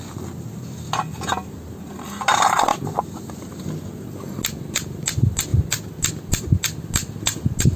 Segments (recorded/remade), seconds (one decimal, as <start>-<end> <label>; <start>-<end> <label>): 0.0-7.8 recorded